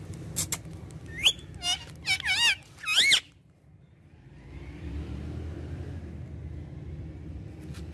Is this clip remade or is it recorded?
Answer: recorded